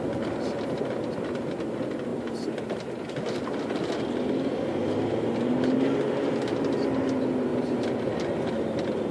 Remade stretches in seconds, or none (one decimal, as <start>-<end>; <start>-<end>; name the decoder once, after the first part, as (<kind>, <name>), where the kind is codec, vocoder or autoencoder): 7.5-8.1 (vocoder, BigVGAN v2)